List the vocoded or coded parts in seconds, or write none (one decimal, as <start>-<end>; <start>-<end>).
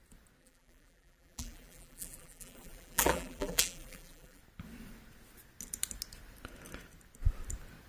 0.4-4.4